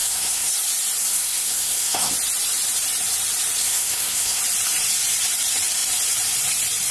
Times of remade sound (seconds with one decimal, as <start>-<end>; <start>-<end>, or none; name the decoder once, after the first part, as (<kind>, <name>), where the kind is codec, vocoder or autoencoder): 0.0-0.5 (codec, SNAC); 1.0-2.1; 3.6-4.4